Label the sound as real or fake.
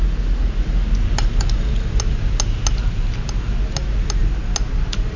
real